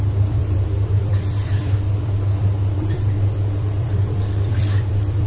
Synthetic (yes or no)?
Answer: yes